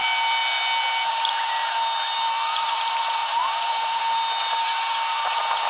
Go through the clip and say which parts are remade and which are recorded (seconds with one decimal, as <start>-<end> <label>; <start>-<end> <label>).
0.0-3.2 recorded; 3.2-4.0 remade; 4.0-5.7 recorded